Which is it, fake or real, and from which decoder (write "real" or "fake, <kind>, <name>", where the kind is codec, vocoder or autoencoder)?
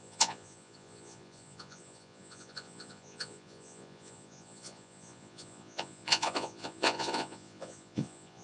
fake, vocoder, Vocos